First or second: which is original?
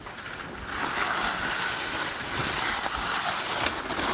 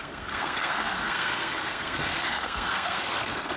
first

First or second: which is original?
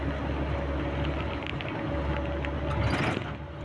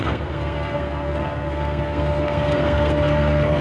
first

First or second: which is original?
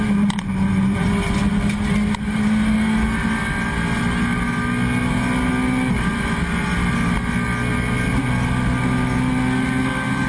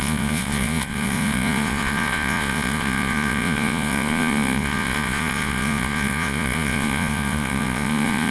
first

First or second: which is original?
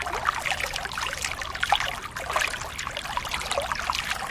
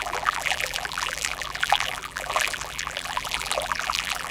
first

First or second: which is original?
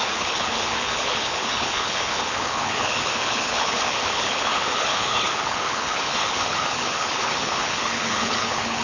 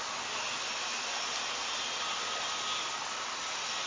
second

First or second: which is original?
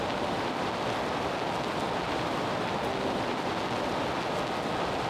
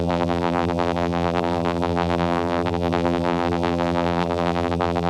first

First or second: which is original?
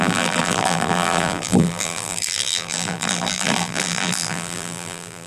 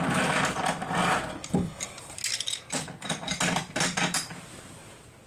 second